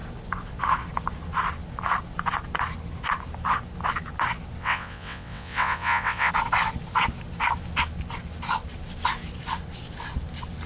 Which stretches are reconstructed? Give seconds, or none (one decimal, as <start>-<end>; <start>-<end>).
4.6-6.3